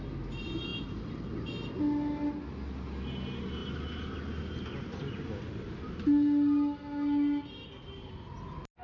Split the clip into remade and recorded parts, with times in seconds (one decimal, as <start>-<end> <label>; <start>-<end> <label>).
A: 0.0-8.8 recorded